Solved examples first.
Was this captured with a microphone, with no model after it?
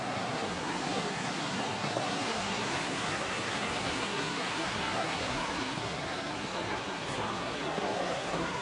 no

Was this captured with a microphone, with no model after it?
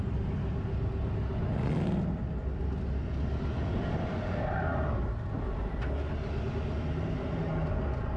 yes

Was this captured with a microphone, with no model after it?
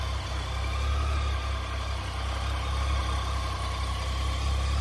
yes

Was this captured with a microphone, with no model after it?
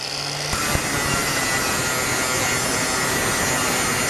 yes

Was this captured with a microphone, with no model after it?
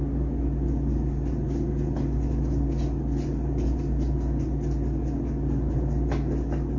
yes